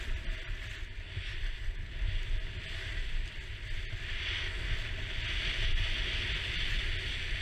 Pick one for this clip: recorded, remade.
recorded